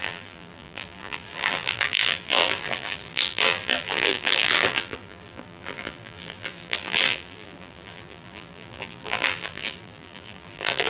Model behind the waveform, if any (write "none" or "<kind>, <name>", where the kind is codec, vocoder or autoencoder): vocoder, BigVGAN v2